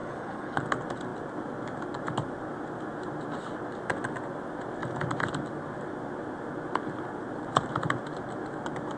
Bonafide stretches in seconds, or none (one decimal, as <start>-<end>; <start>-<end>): 0.6-9.0